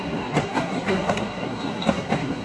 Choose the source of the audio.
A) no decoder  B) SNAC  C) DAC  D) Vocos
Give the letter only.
B